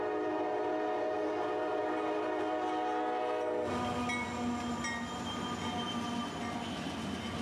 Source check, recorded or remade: recorded